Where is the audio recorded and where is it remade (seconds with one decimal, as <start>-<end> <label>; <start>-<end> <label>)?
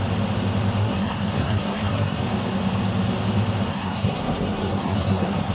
0.0-0.8 recorded; 0.8-2.2 remade; 2.2-3.7 recorded; 3.7-5.5 remade